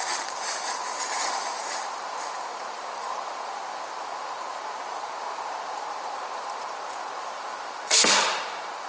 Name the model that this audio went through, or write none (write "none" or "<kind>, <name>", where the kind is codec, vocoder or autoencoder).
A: vocoder, BigVGAN v2